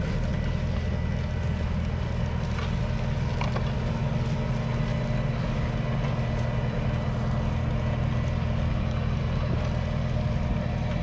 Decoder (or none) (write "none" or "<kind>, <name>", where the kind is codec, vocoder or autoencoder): none